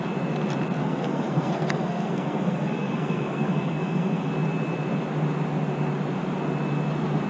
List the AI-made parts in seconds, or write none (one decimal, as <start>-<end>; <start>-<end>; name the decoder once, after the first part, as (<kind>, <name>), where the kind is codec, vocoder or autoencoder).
0.8-4.3 (codec, SNAC)